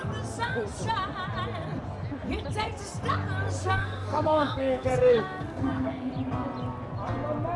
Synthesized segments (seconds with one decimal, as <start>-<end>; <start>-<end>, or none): 3.6-6.1